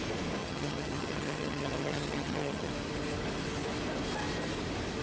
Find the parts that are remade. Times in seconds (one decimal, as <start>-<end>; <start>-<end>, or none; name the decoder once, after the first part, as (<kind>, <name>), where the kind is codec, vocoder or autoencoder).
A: 0.4-2.7 (vocoder, HiFi-GAN)